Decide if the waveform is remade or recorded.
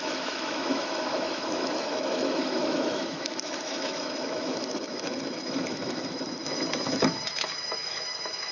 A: remade